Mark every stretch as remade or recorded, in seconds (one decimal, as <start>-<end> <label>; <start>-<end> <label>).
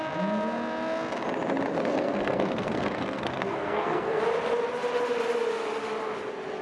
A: 0.0-1.8 recorded; 1.8-4.2 remade; 4.2-6.6 recorded